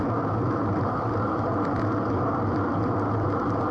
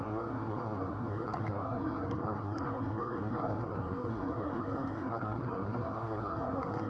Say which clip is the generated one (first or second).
second